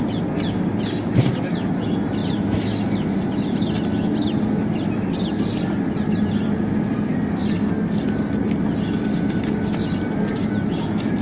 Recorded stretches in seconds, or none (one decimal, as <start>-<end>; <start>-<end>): 0.0-11.2